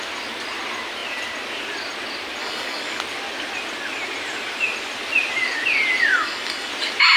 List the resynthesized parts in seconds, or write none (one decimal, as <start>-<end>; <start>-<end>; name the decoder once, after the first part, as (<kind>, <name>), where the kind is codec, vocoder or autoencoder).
2.4-3.0 (codec, DAC); 6.1-6.7